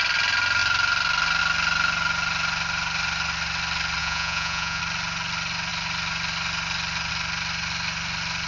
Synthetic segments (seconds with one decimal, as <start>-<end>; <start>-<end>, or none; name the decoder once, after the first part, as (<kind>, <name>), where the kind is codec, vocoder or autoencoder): 4.0-4.8 (vocoder, Vocos)